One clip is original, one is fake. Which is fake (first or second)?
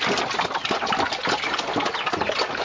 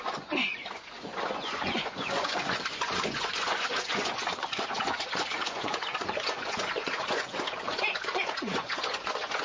second